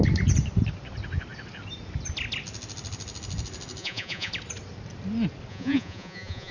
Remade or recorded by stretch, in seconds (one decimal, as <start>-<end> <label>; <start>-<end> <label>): 0.0-3.8 recorded; 3.8-4.3 remade; 4.3-5.5 recorded; 5.5-6.5 remade